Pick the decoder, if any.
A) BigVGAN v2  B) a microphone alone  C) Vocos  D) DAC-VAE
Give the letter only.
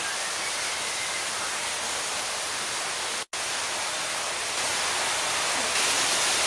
B